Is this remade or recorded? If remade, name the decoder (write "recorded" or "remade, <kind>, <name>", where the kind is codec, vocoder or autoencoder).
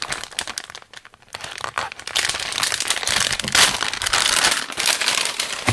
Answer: recorded